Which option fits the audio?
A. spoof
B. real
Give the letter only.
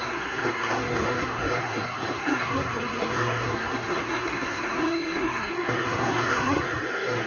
A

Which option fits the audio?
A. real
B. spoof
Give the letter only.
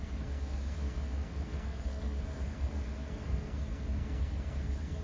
B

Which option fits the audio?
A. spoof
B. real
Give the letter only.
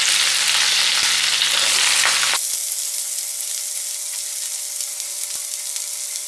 B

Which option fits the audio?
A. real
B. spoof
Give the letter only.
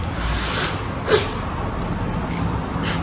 A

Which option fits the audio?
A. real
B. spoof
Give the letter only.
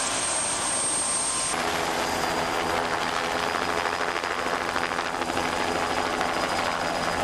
A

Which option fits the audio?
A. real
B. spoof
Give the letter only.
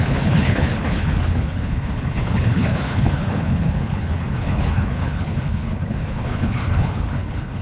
B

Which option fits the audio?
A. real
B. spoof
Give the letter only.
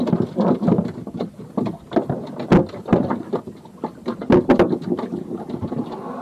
A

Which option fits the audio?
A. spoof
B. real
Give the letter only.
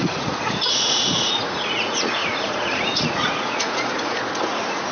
A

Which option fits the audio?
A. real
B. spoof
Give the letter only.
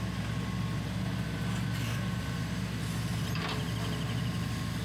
A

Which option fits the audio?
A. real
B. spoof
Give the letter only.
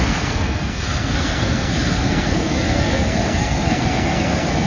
B